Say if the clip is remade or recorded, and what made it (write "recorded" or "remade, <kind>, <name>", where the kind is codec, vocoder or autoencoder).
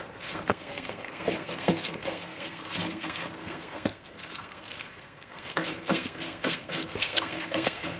remade, codec, SNAC